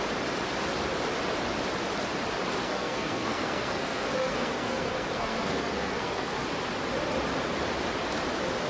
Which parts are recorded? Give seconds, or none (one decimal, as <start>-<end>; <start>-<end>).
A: 0.0-2.6; 6.3-8.7